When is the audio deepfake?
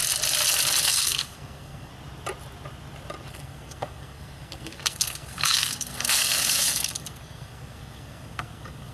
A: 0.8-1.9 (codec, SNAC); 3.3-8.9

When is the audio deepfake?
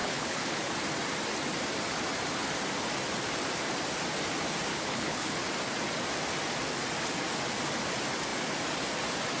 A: 0.0-0.7 (codec, HILCodec); 4.7-5.3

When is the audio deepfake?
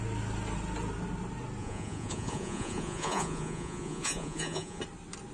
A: 1.6-4.8 (vocoder, Vocos)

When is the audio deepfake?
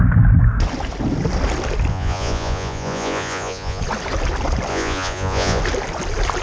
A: 1.9-3.8 (vocoder, Vocos); 4.7-5.6